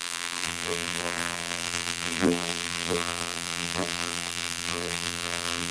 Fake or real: fake